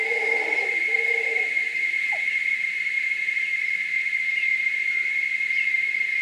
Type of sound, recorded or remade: remade